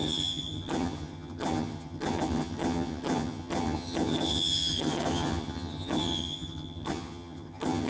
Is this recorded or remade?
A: remade